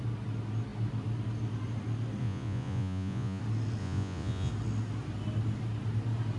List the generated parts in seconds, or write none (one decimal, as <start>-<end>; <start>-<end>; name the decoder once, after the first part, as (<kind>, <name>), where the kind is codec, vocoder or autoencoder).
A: 2.2-3.4 (vocoder, Vocos); 3.8-4.5